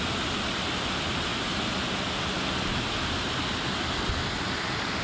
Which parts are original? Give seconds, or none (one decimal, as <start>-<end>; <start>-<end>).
0.0-5.0